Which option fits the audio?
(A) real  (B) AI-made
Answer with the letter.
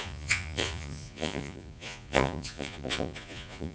B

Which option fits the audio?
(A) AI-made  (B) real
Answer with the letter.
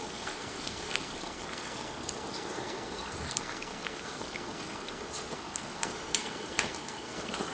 A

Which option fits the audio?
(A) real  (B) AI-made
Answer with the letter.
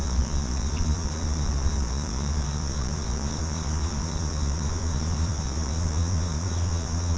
B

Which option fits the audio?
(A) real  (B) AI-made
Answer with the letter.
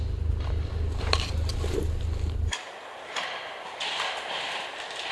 A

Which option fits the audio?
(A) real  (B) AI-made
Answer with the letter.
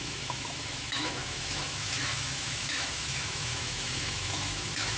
B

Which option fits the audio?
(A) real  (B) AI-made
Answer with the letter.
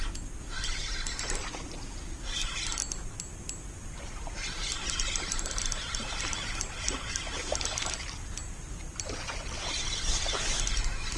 A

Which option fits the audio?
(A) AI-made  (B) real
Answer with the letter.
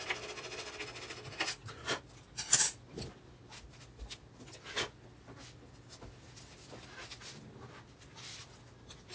B